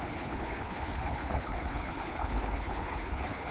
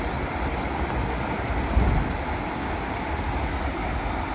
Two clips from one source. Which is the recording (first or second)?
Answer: second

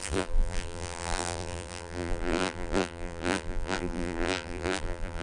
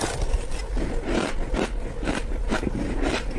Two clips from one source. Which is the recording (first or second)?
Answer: second